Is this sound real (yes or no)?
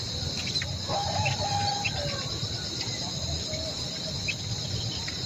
yes